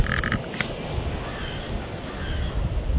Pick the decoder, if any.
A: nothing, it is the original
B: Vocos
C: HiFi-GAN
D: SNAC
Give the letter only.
A